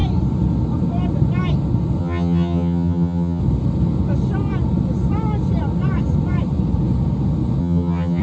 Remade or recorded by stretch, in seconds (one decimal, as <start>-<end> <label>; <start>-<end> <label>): 0.0-2.0 recorded; 2.0-3.4 remade; 3.4-7.6 recorded; 7.6-8.2 remade